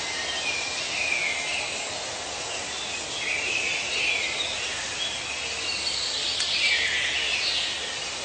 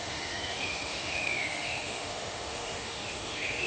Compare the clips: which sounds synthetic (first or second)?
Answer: second